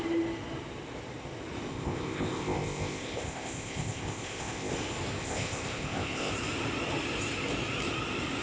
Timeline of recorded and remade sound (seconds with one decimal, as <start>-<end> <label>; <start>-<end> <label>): 0.0-1.7 recorded; 1.7-4.7 remade; 4.7-5.2 recorded; 5.2-6.3 remade; 6.3-8.4 recorded